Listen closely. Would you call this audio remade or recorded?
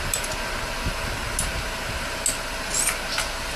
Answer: recorded